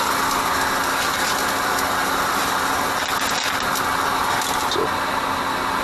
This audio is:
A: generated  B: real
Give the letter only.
B